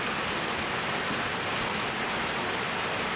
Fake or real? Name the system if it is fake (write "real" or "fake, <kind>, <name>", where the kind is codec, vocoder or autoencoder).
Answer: real